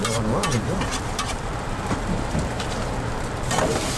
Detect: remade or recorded remade